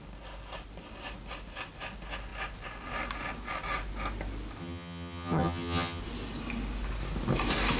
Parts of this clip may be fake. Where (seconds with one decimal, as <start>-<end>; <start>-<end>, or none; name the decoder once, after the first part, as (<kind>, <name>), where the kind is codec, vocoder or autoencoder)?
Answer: 4.6-6.0 (vocoder, HiFi-GAN)